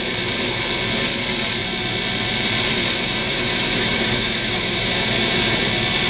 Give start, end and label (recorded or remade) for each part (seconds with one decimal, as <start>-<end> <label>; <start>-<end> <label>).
0.0-3.2 recorded; 3.2-4.9 remade; 4.9-6.1 recorded